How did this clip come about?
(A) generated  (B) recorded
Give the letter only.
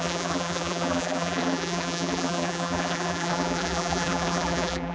A